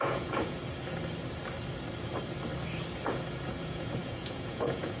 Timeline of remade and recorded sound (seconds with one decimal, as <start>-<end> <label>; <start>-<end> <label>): 0.0-0.6 remade; 0.6-3.6 recorded; 3.6-5.0 remade